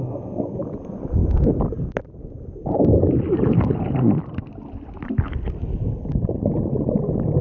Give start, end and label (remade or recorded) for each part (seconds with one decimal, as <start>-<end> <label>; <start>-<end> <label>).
0.0-7.4 recorded